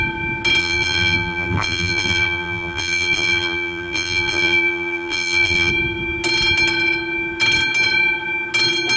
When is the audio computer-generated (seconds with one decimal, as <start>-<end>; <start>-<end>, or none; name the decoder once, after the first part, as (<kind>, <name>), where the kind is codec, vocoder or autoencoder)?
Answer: 0.6-5.7 (vocoder, BigVGAN v2)